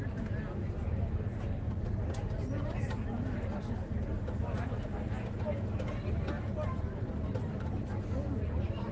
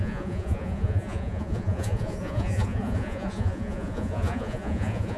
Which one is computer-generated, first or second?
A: second